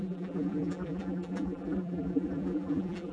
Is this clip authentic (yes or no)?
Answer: no